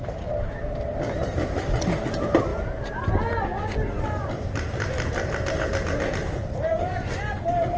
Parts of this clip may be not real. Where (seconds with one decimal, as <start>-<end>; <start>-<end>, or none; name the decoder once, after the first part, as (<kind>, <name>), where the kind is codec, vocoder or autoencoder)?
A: 0.0-7.8 (vocoder, BigVGAN v2)